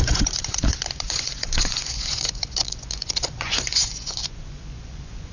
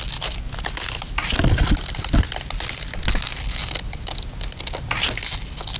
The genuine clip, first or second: second